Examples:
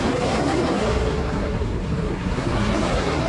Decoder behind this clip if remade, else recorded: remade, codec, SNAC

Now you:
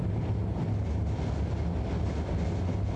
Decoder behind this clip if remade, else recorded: recorded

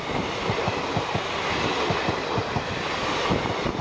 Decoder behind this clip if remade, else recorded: recorded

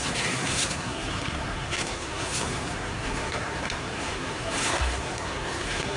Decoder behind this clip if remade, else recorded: remade, codec, SNAC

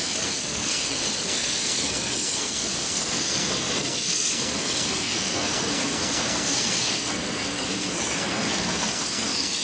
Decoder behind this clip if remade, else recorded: remade, codec, SNAC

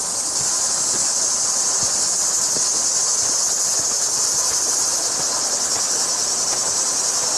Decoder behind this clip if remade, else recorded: recorded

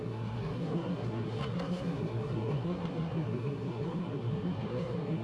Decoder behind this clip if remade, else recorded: remade, codec, SNAC